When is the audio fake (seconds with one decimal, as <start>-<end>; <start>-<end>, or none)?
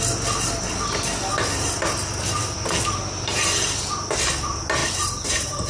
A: 4.8-5.7